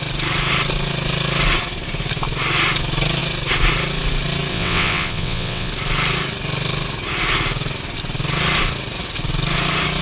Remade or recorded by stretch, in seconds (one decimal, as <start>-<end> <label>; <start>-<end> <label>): 0.0-4.5 recorded; 4.5-5.7 remade; 5.7-10.0 recorded